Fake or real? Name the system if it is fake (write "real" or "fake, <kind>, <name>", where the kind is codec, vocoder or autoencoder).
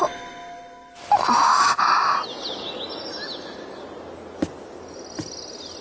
real